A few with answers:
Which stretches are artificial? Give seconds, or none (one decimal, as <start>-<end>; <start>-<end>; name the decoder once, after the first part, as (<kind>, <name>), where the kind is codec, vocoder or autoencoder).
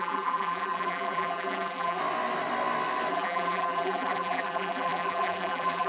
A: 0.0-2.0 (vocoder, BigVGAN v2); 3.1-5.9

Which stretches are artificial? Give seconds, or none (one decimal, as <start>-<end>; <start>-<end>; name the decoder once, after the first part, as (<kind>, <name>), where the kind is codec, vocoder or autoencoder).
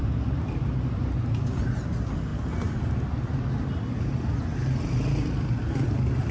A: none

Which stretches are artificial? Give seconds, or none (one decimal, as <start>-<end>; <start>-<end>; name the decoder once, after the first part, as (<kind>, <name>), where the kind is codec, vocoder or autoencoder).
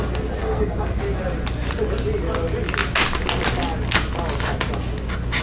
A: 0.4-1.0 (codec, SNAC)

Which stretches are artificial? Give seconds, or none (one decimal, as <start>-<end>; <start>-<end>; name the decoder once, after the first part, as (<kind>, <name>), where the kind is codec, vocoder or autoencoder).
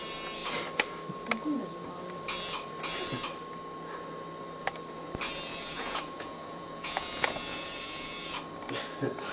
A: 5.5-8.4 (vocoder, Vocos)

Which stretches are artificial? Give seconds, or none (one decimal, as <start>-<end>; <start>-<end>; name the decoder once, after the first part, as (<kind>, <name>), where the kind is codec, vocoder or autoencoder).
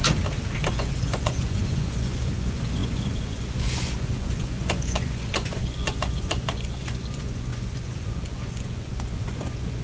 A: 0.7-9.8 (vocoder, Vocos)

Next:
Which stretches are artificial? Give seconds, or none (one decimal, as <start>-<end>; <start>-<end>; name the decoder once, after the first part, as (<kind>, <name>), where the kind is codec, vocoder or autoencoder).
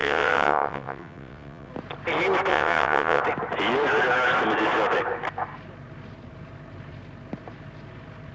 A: 0.0-1.7 (vocoder, WaveNeXt); 2.5-3.2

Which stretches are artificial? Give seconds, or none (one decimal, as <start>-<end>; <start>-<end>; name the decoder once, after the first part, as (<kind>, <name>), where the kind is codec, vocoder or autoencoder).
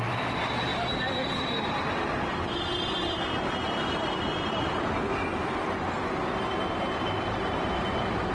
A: 0.7-5.7 (vocoder, BigVGAN v2)